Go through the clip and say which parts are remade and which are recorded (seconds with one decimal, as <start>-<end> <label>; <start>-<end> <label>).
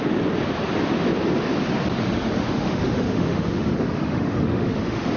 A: 0.0-2.0 recorded; 2.0-5.2 remade